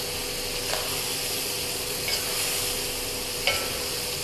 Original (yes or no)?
yes